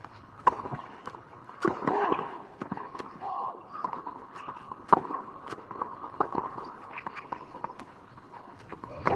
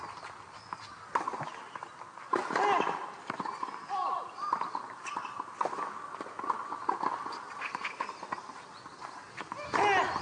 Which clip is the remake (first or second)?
first